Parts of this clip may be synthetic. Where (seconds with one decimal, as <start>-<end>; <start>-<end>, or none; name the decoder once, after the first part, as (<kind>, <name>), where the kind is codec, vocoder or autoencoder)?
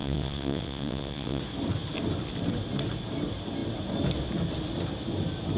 0.0-1.4 (vocoder, WaveNeXt)